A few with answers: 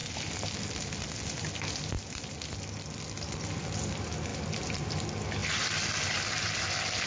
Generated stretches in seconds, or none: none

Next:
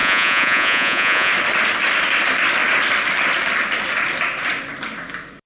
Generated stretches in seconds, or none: 0.0-1.3

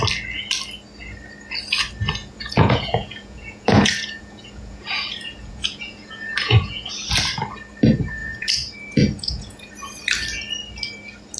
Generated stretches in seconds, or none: 2.2-6.9; 8.2-9.7

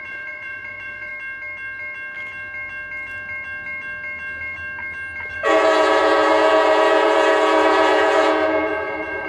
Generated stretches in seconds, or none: 0.0-1.1; 5.3-9.3